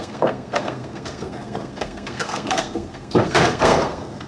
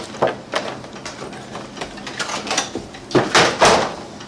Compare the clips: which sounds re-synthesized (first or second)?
first